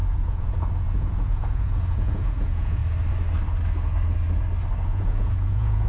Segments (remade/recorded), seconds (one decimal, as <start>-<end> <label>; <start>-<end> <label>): 0.0-2.8 remade; 2.8-4.8 recorded; 4.8-5.9 remade